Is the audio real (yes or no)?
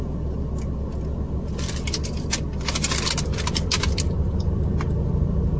yes